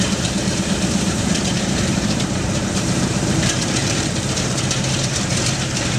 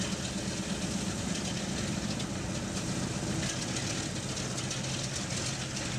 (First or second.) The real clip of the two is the second